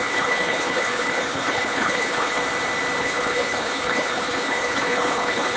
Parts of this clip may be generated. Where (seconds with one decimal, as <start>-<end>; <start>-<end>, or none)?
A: 0.0-2.4; 3.0-5.6